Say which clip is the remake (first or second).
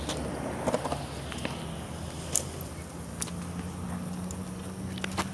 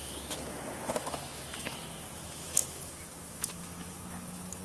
second